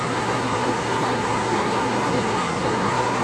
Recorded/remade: remade